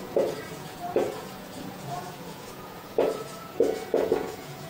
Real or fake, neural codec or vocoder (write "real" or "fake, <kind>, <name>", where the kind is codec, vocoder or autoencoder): fake, vocoder, Vocos